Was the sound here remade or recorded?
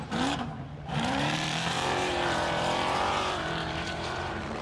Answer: remade